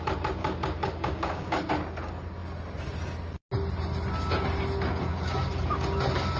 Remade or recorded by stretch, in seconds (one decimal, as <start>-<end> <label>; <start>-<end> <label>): 0.0-0.4 recorded; 0.4-1.7 remade; 1.7-6.4 recorded